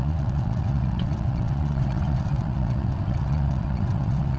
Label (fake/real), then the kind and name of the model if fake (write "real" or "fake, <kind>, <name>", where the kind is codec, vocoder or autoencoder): fake, vocoder, WaveNeXt